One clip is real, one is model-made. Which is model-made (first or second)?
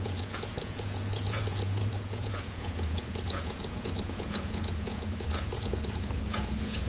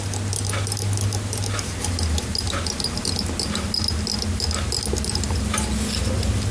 first